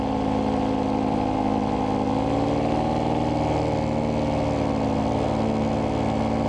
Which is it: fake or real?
real